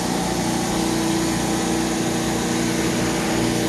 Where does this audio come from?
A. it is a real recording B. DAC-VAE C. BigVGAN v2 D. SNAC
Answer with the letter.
A